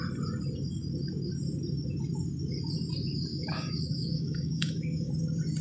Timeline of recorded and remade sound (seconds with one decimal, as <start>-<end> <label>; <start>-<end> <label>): 0.0-3.3 recorded; 3.3-5.1 remade; 5.1-5.6 recorded